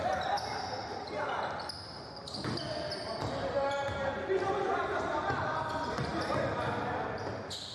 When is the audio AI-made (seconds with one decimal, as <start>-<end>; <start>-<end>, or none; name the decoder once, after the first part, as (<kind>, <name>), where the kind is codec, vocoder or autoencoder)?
none